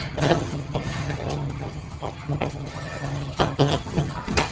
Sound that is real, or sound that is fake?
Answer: fake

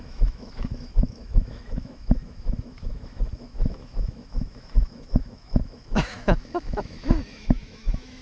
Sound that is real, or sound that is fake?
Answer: fake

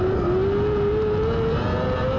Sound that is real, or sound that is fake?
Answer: real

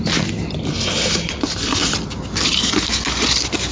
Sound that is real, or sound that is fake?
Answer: real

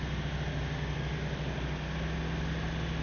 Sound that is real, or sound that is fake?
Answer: real